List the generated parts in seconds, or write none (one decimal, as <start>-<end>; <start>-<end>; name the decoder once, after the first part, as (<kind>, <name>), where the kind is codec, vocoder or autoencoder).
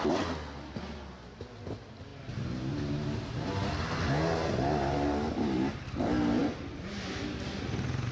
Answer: none